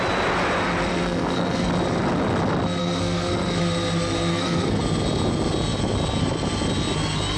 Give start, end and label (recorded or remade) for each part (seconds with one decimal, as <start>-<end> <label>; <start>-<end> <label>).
0.0-0.9 recorded; 0.9-1.7 remade; 1.7-2.8 recorded; 2.8-3.6 remade; 3.6-4.3 recorded; 4.3-4.8 remade; 4.8-7.4 recorded